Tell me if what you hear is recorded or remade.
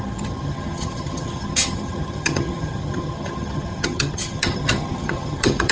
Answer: remade